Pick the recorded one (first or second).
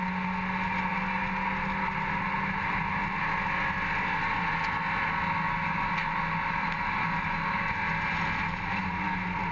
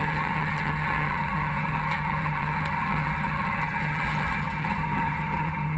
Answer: first